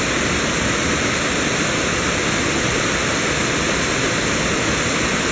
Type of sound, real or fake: real